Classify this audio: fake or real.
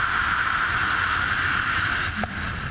real